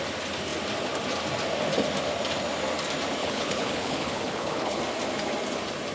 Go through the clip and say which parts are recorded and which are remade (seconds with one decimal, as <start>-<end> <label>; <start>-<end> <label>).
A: 0.0-3.2 recorded; 3.2-4.8 remade; 4.8-5.9 recorded